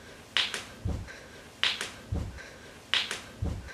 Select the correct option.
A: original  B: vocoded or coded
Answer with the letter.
A